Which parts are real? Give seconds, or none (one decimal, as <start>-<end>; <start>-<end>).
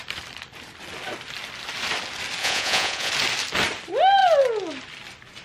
0.0-2.4; 3.1-5.4